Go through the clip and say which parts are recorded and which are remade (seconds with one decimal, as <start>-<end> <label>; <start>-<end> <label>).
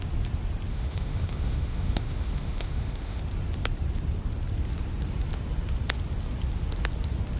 0.0-0.7 recorded; 0.7-3.2 remade; 3.2-7.4 recorded